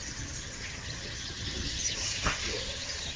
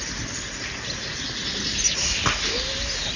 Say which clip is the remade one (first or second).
first